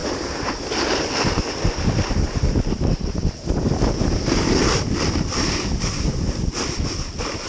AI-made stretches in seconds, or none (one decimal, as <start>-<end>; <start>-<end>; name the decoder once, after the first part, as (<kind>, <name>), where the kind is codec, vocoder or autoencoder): none